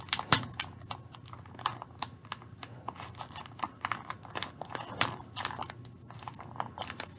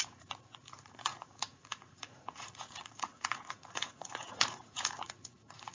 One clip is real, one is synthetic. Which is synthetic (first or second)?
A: second